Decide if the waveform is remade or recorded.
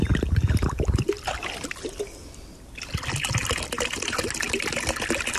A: recorded